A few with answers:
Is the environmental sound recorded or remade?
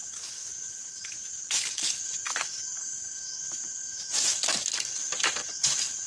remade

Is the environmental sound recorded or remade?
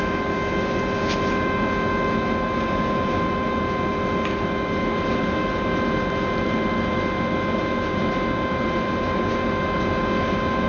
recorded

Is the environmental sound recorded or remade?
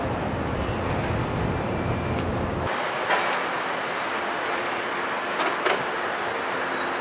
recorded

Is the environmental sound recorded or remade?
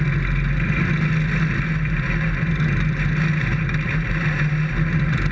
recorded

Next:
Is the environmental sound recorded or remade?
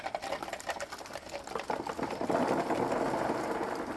recorded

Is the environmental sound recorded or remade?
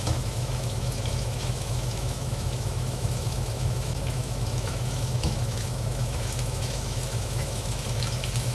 remade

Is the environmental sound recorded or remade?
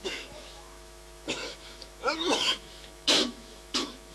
remade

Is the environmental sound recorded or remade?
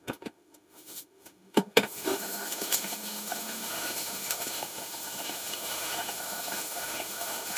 remade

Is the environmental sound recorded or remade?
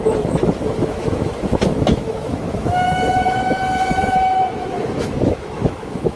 remade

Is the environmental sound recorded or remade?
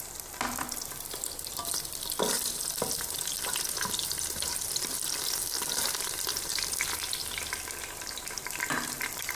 recorded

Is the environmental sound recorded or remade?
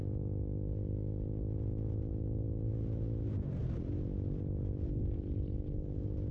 recorded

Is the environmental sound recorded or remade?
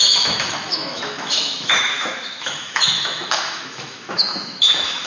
remade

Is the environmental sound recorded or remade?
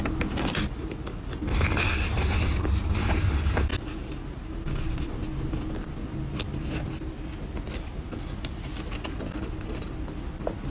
recorded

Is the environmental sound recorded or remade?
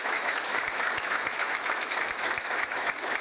remade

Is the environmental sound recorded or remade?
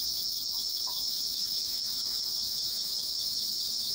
remade